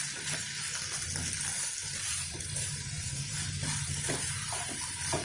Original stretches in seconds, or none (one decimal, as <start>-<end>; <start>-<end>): 0.0-1.8; 4.8-5.2